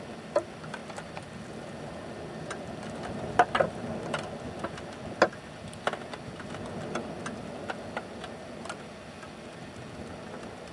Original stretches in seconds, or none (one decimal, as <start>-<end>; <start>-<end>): 0.0-10.7